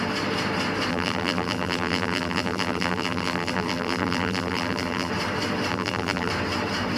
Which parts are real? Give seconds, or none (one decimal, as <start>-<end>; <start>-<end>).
0.0-0.9; 5.1-5.7; 6.3-7.0